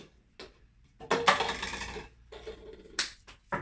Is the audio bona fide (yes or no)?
yes